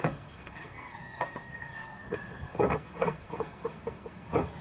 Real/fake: fake